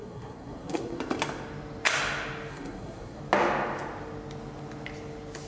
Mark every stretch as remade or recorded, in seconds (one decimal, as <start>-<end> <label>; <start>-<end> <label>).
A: 0.0-1.0 remade; 1.0-2.5 recorded; 2.5-3.2 remade; 3.2-5.5 recorded